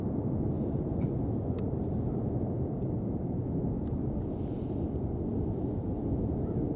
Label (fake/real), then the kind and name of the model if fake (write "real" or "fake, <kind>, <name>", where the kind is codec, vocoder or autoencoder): real